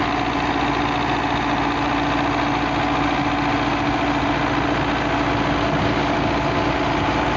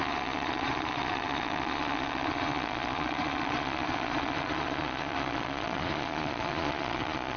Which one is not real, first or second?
second